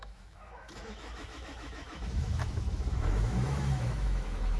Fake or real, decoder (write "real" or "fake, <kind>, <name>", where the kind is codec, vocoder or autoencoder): fake, autoencoder, DAC-VAE